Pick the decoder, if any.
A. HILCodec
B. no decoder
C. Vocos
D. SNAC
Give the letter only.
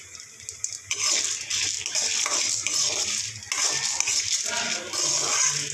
B